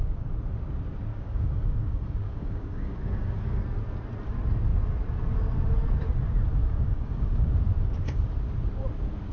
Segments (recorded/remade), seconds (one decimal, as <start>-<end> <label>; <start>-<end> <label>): 0.0-1.1 recorded; 1.1-3.6 remade; 3.6-6.6 recorded; 6.6-7.5 remade; 7.5-9.3 recorded